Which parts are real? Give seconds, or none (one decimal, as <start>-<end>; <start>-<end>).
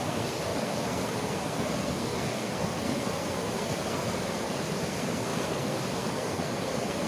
none